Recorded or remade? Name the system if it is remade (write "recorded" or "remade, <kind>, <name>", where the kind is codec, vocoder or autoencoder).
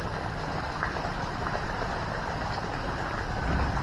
recorded